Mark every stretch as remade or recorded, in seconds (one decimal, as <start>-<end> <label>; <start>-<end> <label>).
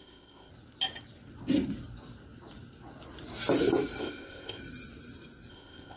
0.0-0.5 remade; 0.5-4.0 recorded; 4.0-4.6 remade; 4.6-5.5 recorded; 5.5-6.0 remade